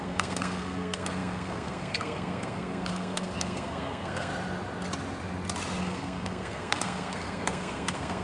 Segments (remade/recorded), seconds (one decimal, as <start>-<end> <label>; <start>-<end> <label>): 0.0-4.3 remade; 4.3-5.8 recorded; 5.8-8.2 remade